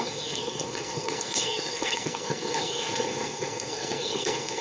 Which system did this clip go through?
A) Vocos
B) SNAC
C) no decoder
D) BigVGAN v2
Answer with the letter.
B